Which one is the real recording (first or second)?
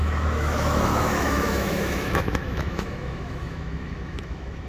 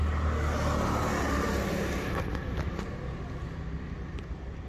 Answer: second